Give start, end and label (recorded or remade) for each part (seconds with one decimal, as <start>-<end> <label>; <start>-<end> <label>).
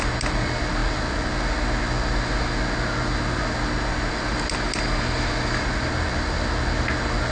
0.0-7.3 recorded